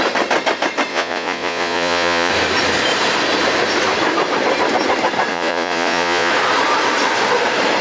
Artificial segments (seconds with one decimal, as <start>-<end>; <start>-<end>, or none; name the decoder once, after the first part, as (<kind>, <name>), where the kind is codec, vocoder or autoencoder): 0.9-2.3 (vocoder, Vocos); 5.3-6.3